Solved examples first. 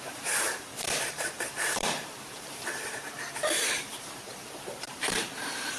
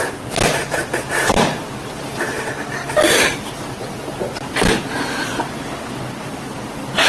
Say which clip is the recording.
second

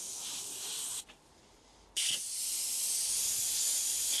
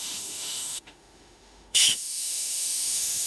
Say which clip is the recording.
first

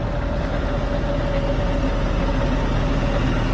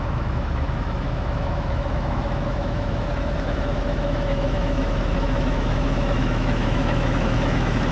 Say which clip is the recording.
first